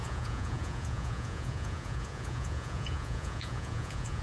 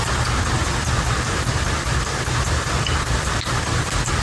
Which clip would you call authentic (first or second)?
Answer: second